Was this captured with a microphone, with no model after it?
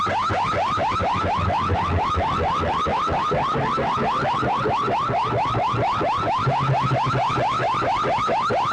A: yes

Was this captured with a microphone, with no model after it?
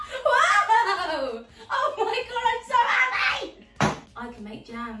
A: yes